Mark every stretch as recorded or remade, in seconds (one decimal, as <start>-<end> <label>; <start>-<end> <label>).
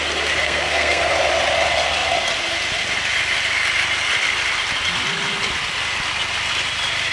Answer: 0.0-0.4 recorded; 0.4-1.0 remade; 1.0-7.1 recorded